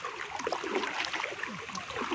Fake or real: real